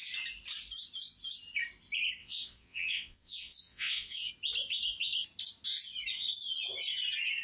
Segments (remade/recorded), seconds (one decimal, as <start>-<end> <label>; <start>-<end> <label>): 0.0-2.2 recorded; 2.2-4.3 remade; 4.3-7.4 recorded